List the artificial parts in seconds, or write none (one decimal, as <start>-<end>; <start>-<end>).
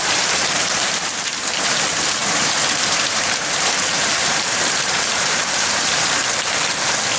0.0-6.2